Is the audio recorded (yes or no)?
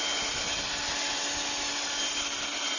yes